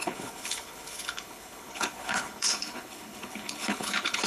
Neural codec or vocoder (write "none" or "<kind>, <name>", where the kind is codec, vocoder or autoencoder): codec, HILCodec